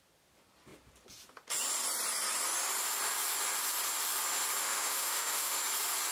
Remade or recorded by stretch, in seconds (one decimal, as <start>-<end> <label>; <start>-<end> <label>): 0.0-4.6 recorded; 4.6-5.6 remade; 5.6-6.1 recorded